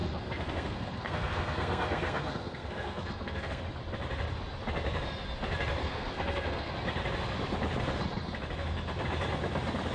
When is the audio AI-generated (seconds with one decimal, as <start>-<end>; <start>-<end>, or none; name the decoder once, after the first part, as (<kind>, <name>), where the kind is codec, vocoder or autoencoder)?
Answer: 0.0-3.6 (codec, SNAC); 5.8-6.7